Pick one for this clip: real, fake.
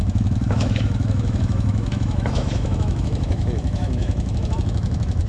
fake